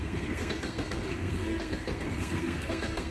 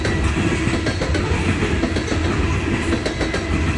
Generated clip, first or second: first